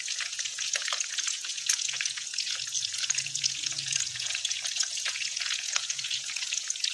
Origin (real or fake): fake